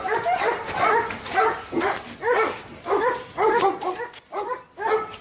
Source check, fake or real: real